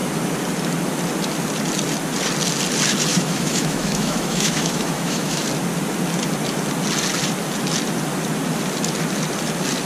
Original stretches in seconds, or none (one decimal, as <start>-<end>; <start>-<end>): 0.0-3.1; 5.4-9.9